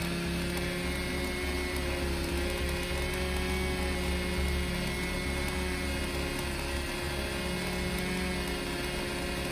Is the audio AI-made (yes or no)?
no